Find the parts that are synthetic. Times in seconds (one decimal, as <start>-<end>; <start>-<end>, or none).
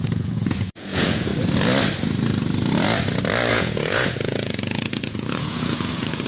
0.0-1.3; 3.5-6.3